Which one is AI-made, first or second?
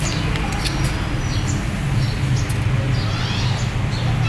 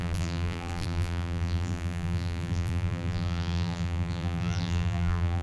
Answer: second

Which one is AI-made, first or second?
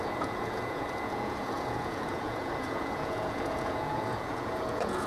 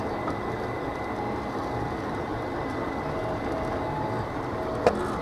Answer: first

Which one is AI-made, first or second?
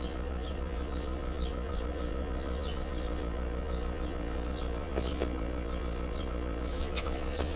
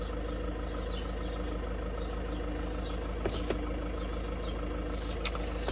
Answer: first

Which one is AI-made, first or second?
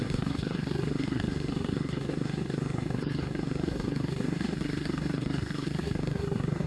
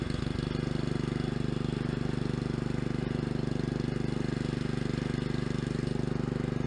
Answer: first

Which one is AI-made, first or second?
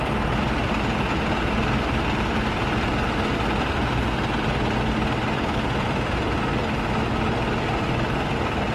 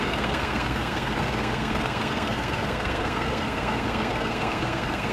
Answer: second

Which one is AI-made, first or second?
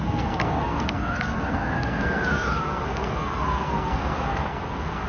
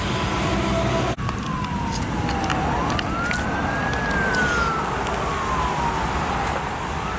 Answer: first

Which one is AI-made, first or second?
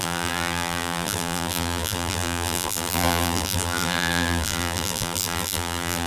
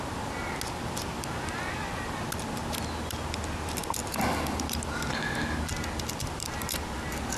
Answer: first